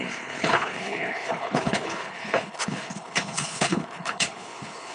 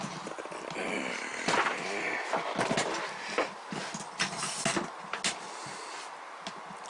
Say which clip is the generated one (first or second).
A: first